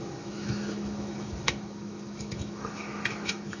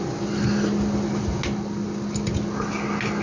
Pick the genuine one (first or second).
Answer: second